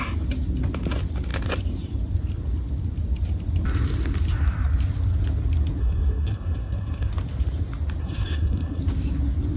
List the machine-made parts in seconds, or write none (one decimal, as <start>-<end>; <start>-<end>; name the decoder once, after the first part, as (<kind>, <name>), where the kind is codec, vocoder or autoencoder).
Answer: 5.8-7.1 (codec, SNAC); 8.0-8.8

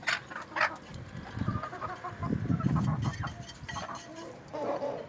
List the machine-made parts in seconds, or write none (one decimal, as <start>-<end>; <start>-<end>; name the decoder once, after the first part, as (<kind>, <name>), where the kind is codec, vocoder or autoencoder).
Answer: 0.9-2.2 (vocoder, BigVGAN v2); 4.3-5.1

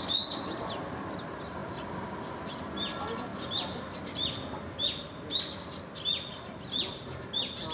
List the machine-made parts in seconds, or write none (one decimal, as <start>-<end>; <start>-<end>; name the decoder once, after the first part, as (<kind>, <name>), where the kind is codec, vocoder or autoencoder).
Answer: none

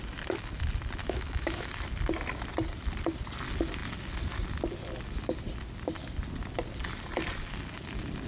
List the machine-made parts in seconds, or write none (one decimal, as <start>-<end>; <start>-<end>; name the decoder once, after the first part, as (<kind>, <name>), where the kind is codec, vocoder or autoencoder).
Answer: 1.0-1.7 (autoencoder, DAC-VAE)

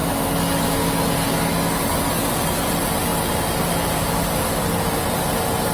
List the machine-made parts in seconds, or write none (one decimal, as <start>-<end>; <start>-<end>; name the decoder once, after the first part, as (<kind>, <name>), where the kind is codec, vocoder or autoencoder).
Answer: none